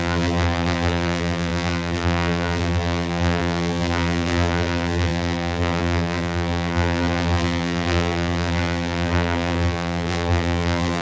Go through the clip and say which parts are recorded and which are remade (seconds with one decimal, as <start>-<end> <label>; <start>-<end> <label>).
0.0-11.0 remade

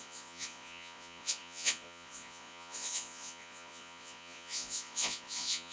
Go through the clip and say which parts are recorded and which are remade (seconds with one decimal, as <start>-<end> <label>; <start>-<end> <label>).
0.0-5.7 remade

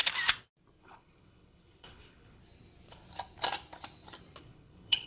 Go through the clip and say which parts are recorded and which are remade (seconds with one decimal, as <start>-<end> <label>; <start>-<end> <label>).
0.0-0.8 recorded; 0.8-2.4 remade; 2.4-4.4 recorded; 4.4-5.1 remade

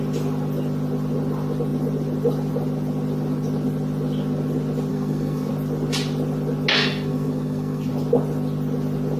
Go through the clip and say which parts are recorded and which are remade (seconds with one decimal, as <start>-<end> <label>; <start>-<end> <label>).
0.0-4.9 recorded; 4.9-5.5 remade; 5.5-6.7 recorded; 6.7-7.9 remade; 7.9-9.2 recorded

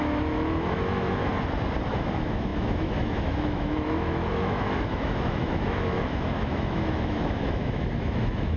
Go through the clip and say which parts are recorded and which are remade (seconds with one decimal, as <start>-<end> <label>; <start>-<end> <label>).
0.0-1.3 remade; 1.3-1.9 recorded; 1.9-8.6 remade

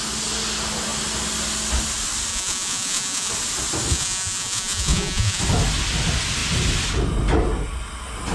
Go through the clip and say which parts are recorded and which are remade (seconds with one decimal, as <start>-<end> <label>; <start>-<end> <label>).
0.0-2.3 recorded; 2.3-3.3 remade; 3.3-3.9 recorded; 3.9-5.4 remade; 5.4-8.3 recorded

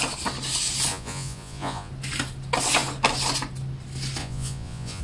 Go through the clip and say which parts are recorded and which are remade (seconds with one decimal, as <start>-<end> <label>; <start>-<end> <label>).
0.0-0.9 recorded; 0.9-1.9 remade; 1.9-4.2 recorded; 4.2-5.0 remade